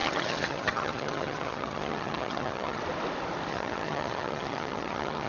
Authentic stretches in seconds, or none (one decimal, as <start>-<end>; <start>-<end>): 2.8-3.5